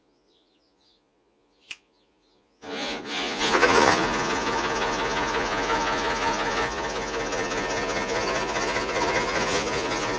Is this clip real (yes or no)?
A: no